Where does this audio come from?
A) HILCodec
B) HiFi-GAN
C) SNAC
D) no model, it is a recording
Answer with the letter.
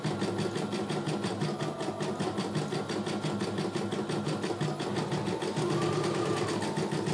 D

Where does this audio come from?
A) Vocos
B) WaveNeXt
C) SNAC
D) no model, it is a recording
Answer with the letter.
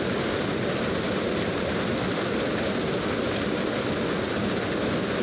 D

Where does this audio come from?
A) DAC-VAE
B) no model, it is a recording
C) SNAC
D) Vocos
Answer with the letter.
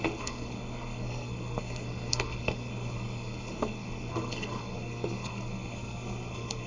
C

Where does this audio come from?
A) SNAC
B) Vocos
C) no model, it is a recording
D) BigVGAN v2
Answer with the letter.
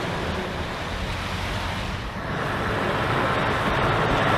C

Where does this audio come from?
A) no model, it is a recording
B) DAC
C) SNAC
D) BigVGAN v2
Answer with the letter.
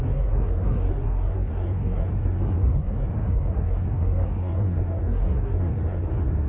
C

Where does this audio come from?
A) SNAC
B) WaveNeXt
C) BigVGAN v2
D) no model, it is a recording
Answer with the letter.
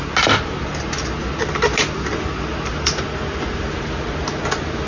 D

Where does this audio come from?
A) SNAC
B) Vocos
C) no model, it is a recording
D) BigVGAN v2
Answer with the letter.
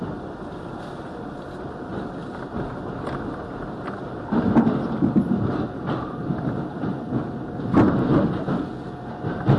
C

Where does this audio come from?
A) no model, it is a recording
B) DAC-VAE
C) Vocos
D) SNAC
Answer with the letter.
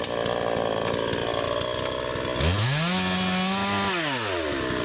A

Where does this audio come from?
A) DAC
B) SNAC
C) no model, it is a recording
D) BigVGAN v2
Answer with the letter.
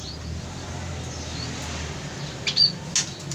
C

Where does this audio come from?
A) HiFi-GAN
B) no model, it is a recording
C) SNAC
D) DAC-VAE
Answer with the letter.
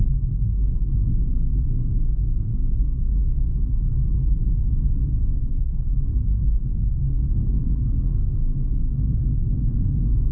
C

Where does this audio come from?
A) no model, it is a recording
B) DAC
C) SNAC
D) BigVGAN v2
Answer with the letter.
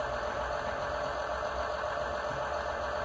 A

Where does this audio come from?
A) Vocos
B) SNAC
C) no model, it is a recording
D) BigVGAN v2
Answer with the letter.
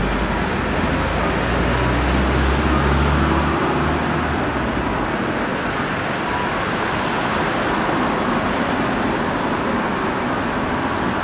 C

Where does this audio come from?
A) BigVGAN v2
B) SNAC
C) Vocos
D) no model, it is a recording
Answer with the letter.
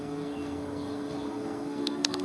B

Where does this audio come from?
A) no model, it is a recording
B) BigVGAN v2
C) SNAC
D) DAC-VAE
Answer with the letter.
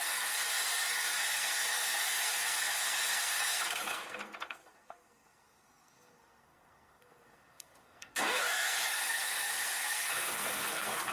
C